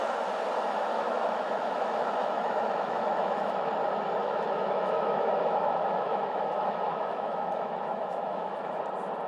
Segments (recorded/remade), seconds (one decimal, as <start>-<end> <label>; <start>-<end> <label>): 0.0-0.9 recorded; 0.9-3.7 remade; 3.7-4.2 recorded; 4.2-8.8 remade; 8.8-9.3 recorded